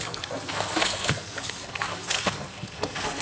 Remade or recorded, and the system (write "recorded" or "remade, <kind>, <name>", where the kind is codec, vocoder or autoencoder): remade, codec, SNAC